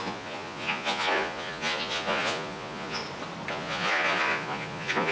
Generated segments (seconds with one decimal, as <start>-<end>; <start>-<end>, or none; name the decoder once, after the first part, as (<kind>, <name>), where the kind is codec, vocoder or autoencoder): 0.0-3.0 (vocoder, Vocos); 3.5-5.1